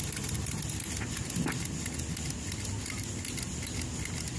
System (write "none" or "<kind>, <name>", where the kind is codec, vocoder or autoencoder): none